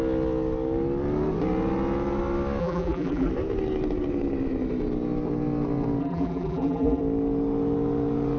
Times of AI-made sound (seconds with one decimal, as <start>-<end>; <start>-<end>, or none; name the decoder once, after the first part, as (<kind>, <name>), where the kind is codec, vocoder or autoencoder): 2.6-3.3 (vocoder, BigVGAN v2); 6.0-7.0